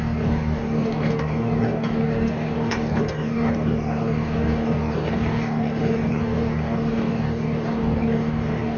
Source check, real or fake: fake